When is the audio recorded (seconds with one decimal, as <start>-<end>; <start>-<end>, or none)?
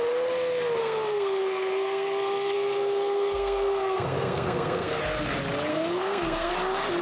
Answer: 0.0-0.8; 5.0-5.7; 6.5-7.0